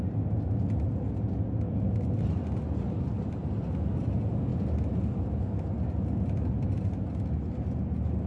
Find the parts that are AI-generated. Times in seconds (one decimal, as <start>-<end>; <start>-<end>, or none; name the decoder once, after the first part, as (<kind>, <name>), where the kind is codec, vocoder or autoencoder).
none